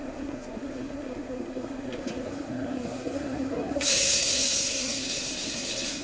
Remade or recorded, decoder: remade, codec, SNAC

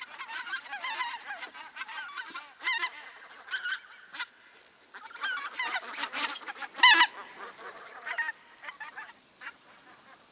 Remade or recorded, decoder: recorded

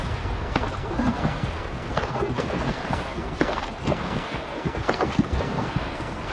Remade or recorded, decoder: remade, codec, SNAC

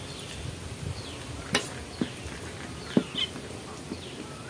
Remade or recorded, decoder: recorded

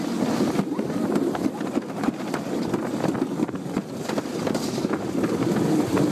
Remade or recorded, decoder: recorded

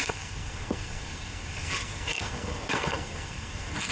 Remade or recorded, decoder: remade, codec, SNAC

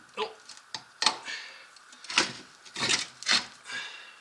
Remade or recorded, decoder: recorded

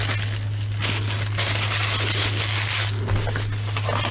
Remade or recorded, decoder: recorded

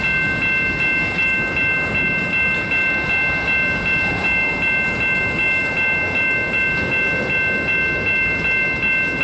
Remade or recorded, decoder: recorded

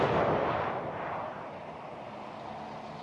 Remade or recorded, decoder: recorded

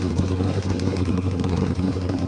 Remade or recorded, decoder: remade, codec, SNAC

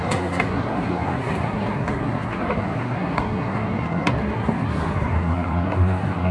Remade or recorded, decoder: remade, codec, SNAC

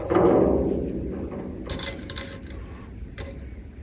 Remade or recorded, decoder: recorded